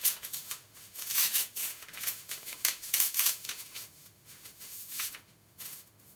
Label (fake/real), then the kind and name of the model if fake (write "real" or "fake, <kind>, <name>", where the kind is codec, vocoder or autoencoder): fake, autoencoder, DAC-VAE